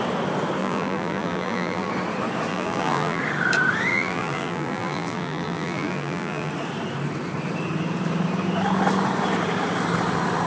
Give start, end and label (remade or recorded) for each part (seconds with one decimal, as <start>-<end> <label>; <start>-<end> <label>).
0.0-0.6 recorded; 0.6-1.9 remade; 1.9-2.5 recorded; 2.5-3.2 remade; 3.2-3.9 recorded; 3.9-6.5 remade; 6.5-10.5 recorded